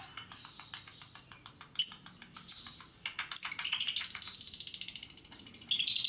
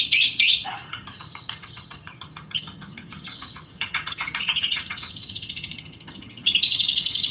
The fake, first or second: second